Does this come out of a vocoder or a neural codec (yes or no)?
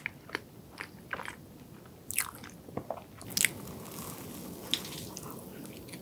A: no